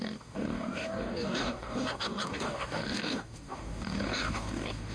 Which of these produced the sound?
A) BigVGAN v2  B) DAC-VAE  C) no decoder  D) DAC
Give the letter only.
D